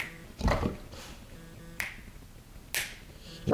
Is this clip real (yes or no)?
yes